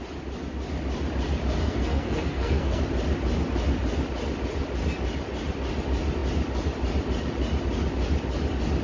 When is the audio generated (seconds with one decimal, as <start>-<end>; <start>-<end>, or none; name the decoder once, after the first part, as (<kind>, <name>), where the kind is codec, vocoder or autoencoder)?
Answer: 1.6-2.8 (codec, SNAC)